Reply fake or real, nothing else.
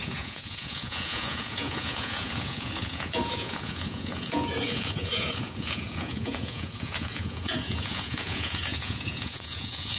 fake